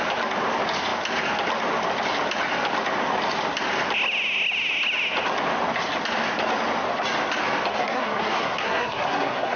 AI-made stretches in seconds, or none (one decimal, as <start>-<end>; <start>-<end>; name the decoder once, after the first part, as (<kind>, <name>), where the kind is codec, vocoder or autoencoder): 7.7-9.6 (codec, SNAC)